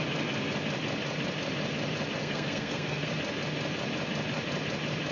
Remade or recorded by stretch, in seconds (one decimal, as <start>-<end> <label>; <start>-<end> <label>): 0.0-2.2 recorded; 2.2-3.1 remade; 3.1-5.1 recorded